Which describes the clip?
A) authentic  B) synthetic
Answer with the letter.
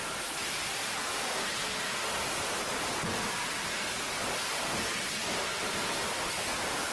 A